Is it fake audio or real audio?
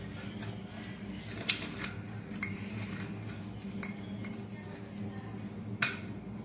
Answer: real